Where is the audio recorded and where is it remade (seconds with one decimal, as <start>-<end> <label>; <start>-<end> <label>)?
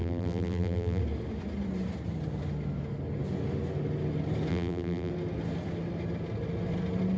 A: 0.0-1.0 remade; 1.0-4.5 recorded; 4.5-5.1 remade; 5.1-7.2 recorded